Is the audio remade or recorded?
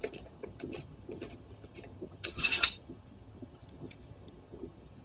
remade